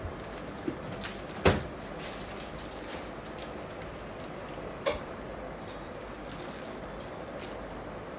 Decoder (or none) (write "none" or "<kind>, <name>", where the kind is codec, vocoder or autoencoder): none